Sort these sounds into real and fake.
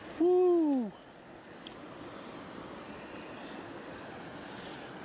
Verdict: real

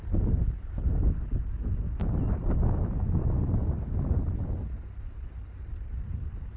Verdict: real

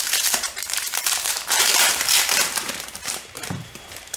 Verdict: fake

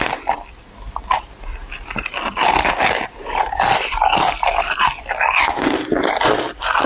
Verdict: real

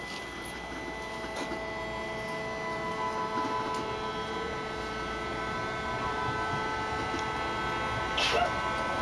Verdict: real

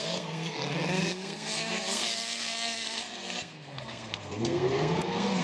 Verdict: fake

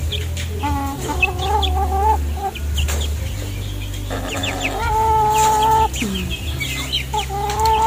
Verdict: real